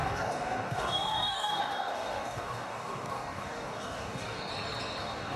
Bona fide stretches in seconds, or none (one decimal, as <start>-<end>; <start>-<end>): 4.5-5.0